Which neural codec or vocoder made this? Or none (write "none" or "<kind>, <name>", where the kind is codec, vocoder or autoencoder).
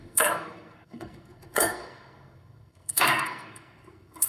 codec, SNAC